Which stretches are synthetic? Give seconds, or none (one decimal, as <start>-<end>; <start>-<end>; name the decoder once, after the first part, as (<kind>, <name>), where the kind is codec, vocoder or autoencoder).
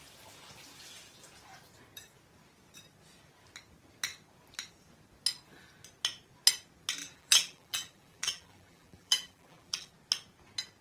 7.0-9.9 (vocoder, BigVGAN v2)